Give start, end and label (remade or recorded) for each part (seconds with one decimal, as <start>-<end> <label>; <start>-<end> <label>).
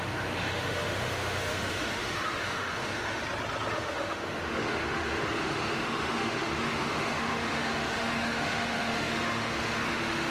0.0-3.2 remade; 3.2-3.7 recorded; 3.7-10.3 remade